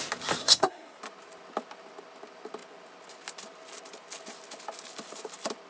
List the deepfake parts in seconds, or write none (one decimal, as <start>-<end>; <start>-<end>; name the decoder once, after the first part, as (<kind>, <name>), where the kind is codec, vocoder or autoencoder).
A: 0.4-1.0 (codec, SNAC)